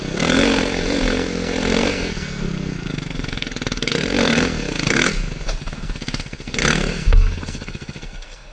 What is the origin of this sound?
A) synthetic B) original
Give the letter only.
A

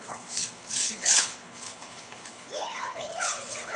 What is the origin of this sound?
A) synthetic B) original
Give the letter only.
A